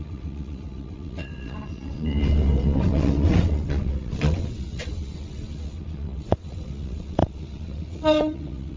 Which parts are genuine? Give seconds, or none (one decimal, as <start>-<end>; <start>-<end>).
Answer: none

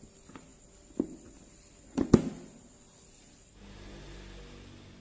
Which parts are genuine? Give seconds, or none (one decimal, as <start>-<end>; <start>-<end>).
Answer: 0.0-5.0